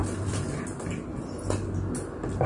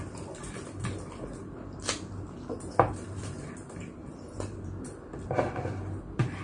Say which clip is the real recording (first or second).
first